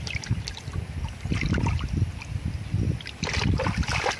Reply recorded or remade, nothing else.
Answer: recorded